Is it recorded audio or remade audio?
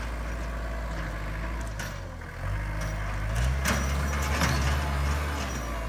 recorded